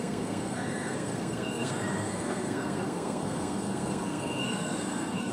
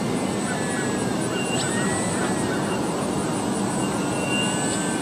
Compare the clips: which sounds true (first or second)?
second